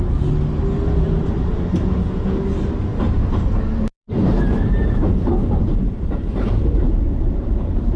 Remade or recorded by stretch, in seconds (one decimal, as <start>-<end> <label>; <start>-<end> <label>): 0.0-2.9 recorded; 2.9-6.9 remade; 6.9-8.0 recorded